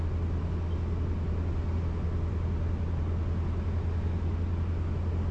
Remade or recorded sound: recorded